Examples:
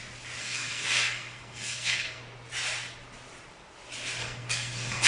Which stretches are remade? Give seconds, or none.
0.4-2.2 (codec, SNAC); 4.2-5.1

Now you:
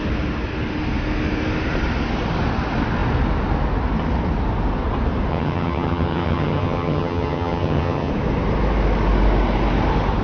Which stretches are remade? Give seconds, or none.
5.3-8.1 (vocoder, HiFi-GAN)

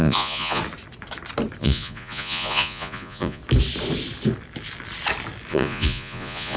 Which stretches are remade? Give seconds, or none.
0.0-0.6 (vocoder, Vocos); 1.6-3.4; 5.5-6.6

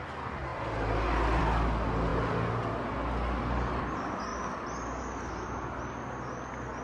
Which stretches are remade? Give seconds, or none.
none

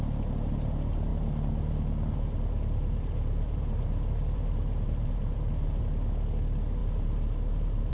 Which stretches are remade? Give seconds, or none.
1.1-5.8 (vocoder, BigVGAN v2); 6.8-7.9

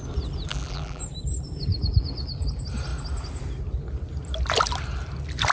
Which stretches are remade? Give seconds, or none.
0.5-1.0 (vocoder, BigVGAN v2)

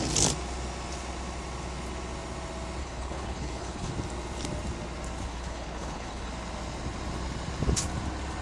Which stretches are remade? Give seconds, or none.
2.8-3.9 (codec, HILCodec); 5.3-6.3

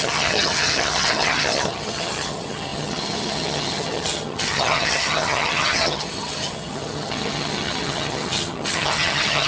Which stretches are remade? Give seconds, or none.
0.0-9.5 (vocoder, HiFi-GAN)